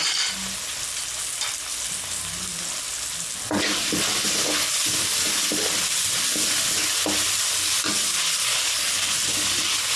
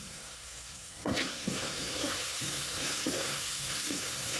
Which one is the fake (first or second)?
second